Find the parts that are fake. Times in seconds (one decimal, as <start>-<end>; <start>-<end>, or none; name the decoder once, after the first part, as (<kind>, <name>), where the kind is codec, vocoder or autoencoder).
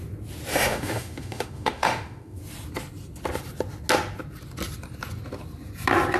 0.5-2.4 (autoencoder, DAC-VAE)